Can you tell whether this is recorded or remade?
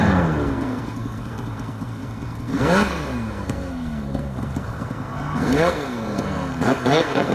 remade